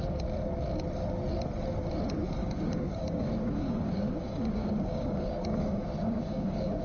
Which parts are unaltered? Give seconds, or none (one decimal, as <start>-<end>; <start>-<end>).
0.0-2.4